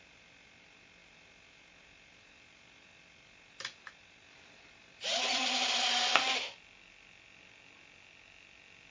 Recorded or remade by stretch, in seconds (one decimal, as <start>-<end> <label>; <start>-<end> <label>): 0.0-1.0 recorded; 1.0-5.9 remade; 5.9-8.9 recorded